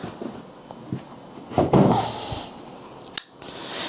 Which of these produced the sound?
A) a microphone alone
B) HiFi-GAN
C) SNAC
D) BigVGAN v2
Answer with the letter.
A